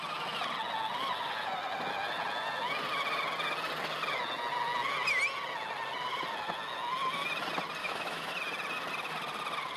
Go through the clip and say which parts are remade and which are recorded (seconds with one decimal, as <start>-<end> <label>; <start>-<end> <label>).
0.0-7.8 recorded; 7.8-8.3 remade; 8.3-9.8 recorded